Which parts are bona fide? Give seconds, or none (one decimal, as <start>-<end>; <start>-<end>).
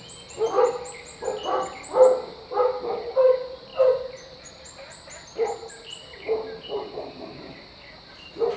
0.0-8.6